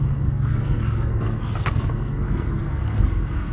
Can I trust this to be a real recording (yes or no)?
no